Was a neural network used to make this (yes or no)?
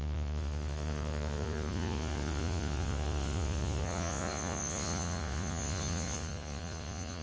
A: yes